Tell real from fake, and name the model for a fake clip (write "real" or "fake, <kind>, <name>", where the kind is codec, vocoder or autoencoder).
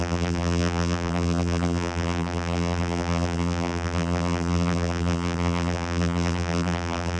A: fake, vocoder, BigVGAN v2